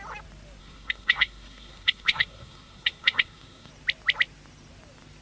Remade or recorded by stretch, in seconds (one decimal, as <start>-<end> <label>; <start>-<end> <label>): 0.0-0.6 recorded; 0.6-3.7 remade; 3.7-5.2 recorded